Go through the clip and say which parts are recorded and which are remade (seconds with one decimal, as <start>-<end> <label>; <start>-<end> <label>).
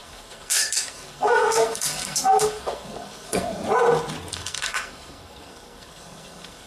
0.0-3.6 remade; 3.6-4.3 recorded; 4.3-6.7 remade